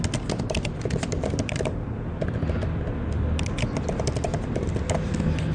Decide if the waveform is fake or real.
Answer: real